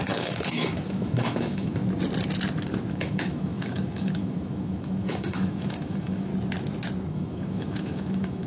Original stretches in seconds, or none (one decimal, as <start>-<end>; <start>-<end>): 1.8-2.9; 6.3-7.1